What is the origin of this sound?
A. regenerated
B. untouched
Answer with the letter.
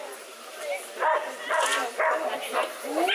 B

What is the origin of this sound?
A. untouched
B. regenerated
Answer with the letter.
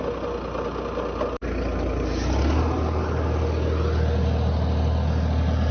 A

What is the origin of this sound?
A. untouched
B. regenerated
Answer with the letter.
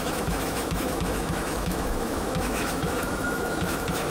B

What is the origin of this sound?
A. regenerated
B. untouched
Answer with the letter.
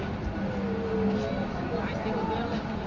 B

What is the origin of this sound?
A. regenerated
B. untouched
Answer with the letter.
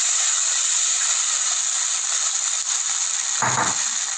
B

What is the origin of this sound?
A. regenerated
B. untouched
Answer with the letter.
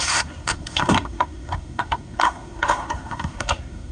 A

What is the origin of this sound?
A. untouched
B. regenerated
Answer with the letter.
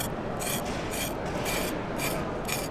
A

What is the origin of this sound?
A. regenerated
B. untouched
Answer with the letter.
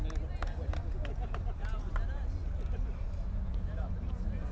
B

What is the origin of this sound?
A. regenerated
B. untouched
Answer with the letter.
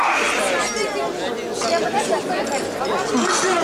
B